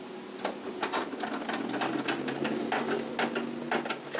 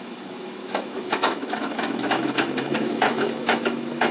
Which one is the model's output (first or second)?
second